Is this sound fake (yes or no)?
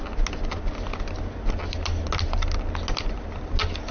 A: no